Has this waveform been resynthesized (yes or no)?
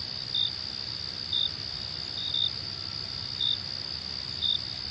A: no